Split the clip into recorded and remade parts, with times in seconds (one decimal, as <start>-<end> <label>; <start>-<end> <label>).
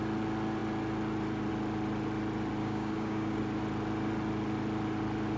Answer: 0.0-2.6 recorded; 2.6-3.4 remade; 3.4-5.4 recorded